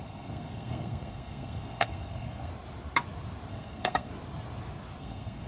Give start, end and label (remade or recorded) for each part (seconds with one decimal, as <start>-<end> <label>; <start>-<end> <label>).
0.0-2.5 remade; 2.5-3.5 recorded; 3.5-4.1 remade; 4.1-5.0 recorded; 5.0-5.5 remade